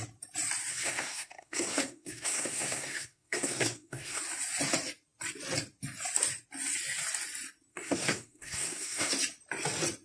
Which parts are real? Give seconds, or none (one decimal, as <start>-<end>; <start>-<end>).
0.0-0.7; 4.2-7.7; 9.1-10.0